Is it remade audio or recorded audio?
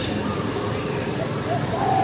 recorded